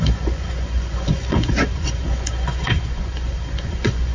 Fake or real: fake